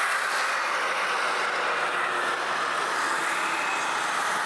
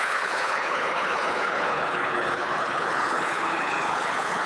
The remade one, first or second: second